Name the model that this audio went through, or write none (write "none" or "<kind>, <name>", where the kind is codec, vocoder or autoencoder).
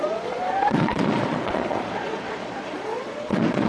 vocoder, Vocos